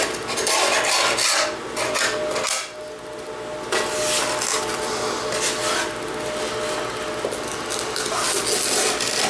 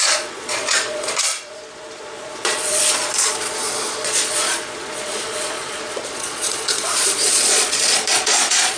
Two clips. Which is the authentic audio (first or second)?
first